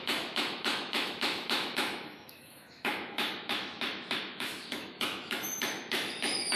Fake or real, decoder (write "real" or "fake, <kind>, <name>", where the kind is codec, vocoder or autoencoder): fake, autoencoder, DAC-VAE